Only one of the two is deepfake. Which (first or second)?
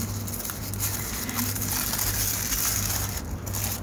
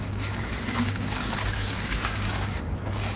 second